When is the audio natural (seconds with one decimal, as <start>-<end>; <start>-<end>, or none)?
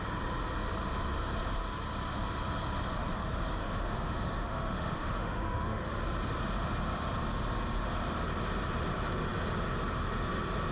0.0-3.6; 5.8-10.7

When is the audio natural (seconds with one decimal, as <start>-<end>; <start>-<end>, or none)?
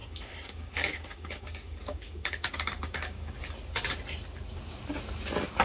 3.4-5.6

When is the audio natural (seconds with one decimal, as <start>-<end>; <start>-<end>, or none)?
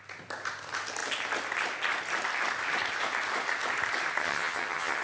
0.0-4.2